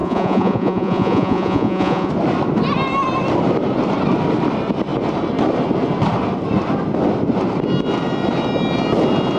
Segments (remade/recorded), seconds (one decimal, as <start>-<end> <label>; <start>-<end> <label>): 0.0-2.1 remade; 2.1-9.4 recorded